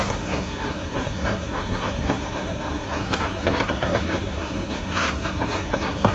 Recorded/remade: remade